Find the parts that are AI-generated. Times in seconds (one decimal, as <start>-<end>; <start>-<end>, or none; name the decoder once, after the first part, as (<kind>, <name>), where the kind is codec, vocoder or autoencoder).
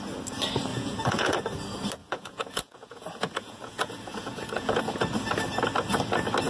0.7-1.4 (vocoder, Vocos); 2.0-4.8